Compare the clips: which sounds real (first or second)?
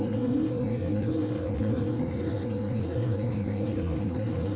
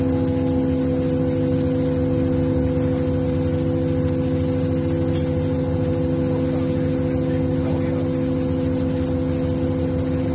second